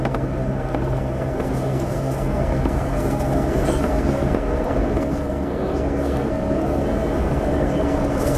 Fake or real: fake